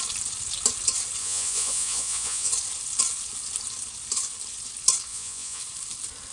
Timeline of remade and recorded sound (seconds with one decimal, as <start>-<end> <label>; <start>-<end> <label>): 0.0-1.2 recorded; 1.2-2.5 remade; 2.5-5.1 recorded; 5.1-5.6 remade; 5.6-6.3 recorded